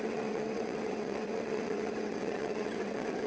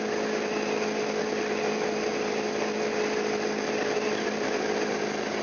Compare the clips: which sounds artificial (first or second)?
first